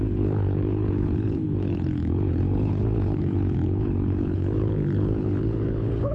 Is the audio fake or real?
fake